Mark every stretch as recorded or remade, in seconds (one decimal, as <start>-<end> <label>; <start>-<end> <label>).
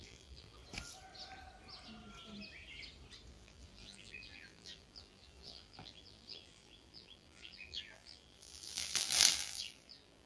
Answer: 0.0-0.6 remade; 0.6-3.3 recorded; 3.3-10.3 remade